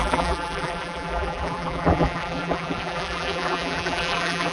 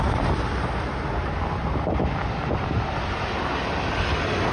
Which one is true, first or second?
second